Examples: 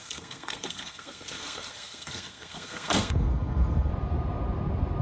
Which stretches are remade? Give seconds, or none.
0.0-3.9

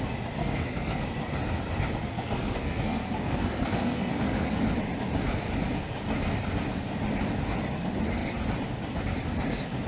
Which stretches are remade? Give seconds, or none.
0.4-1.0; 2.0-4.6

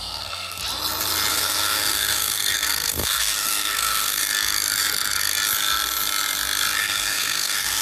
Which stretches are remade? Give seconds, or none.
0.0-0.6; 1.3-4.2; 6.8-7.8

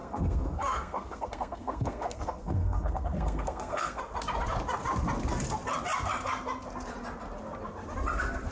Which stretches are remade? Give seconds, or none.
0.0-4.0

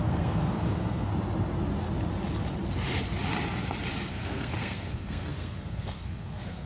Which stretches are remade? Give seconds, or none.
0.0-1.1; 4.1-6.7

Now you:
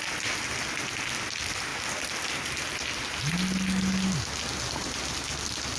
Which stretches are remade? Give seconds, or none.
none

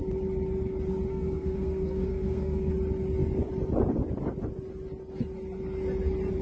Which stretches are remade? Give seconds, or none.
1.1-2.7

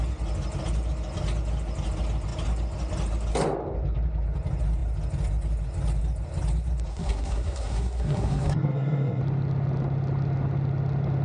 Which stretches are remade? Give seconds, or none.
6.9-9.2